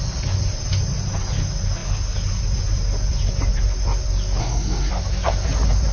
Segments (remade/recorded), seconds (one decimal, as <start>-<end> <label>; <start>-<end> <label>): 0.0-4.4 recorded; 4.4-4.9 remade; 4.9-5.9 recorded